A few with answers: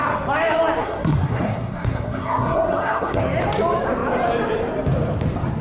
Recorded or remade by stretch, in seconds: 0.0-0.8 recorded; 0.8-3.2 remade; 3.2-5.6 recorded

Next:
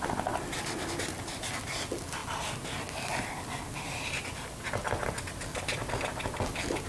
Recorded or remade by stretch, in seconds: 0.0-6.9 recorded